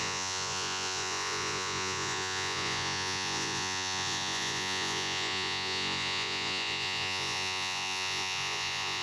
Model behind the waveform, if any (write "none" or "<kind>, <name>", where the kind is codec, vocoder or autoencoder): vocoder, Vocos